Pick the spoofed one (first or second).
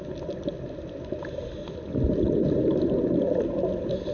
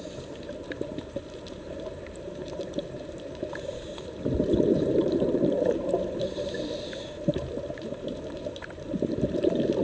second